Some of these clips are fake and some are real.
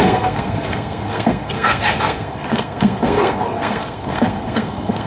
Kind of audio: fake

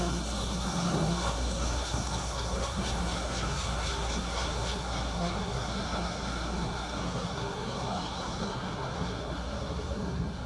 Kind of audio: fake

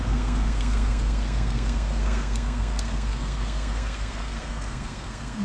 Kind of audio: fake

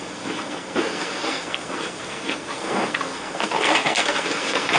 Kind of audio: fake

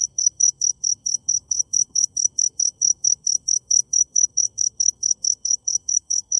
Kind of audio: fake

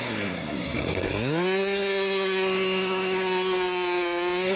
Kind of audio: fake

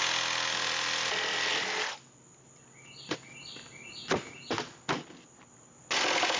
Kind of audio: real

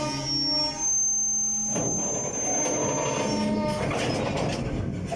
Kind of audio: real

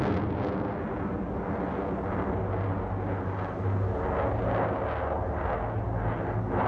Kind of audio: real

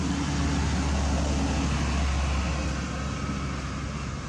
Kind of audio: real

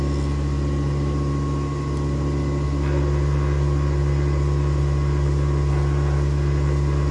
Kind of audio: real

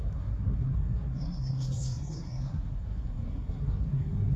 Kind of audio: fake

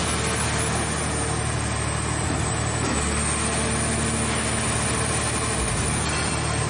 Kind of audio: real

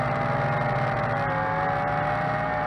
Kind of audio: real